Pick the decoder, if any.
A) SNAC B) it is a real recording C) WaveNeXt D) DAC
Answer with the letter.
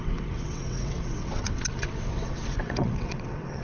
C